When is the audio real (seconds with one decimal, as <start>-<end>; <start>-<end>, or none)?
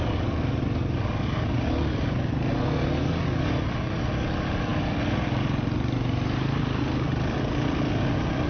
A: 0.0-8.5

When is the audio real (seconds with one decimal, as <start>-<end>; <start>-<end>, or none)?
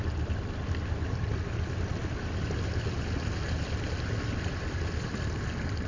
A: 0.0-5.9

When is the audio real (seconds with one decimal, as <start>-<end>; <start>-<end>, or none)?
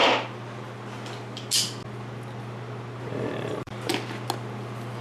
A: 0.0-3.0; 3.9-5.0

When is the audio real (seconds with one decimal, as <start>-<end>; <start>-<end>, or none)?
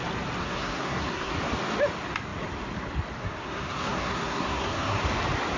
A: 0.0-0.4; 1.3-3.2; 5.0-5.6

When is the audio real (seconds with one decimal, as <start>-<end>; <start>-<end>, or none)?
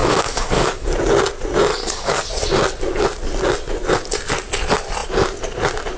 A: 0.9-1.7; 2.3-6.0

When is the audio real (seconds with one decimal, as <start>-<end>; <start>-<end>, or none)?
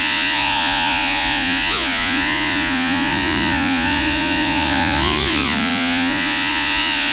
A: none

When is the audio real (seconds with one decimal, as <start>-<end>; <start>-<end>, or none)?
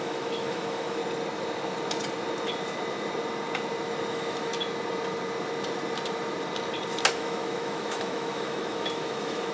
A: 1.0-4.1; 4.5-7.1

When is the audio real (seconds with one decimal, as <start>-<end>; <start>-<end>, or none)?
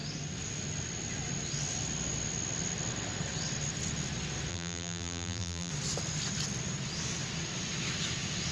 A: 0.0-4.5; 5.7-8.5